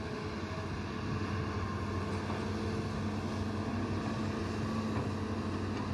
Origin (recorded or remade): recorded